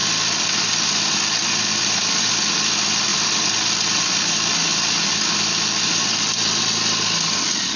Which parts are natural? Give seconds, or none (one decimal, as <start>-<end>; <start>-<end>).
2.3-3.1; 4.2-4.7; 6.6-7.8